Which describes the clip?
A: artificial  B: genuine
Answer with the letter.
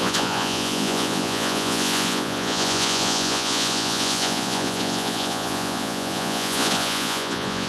A